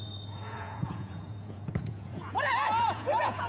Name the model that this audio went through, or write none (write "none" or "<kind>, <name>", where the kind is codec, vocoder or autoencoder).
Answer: vocoder, Vocos